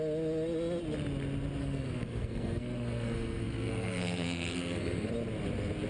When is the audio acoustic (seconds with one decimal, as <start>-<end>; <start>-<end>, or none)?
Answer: 0.0-1.6; 5.1-5.9